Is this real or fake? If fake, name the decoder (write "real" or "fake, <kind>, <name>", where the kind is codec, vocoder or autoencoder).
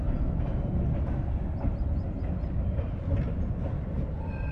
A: real